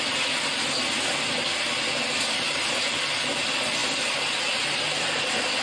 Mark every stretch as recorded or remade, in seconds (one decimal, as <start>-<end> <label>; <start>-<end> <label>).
0.0-5.6 recorded